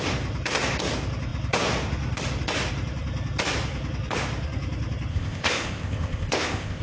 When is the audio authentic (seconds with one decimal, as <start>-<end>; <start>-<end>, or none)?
0.0-5.1